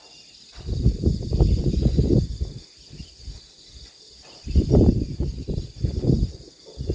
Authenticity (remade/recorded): recorded